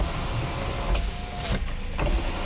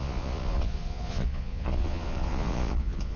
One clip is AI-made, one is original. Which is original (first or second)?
first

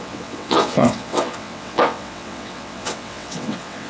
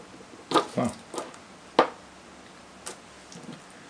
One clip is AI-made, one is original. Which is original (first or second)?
second